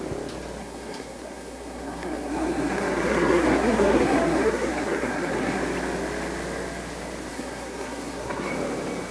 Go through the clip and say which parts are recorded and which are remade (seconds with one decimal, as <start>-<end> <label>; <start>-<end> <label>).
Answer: 0.0-0.6 recorded; 0.6-5.6 remade; 5.6-7.3 recorded; 7.3-8.5 remade; 8.5-9.1 recorded